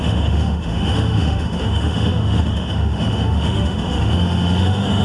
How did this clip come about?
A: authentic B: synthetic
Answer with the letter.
B